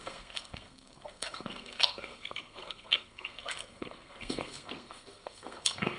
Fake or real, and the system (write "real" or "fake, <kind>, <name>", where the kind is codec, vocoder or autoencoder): fake, codec, SNAC